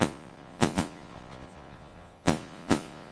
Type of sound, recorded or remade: remade